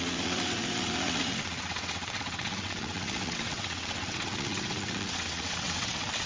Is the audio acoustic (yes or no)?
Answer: no